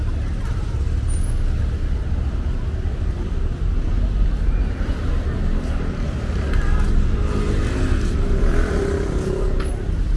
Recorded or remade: recorded